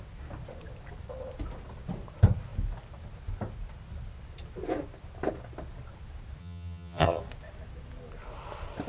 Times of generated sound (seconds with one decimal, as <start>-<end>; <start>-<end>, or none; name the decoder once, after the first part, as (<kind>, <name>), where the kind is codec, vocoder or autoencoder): 6.4-7.2 (vocoder, HiFi-GAN)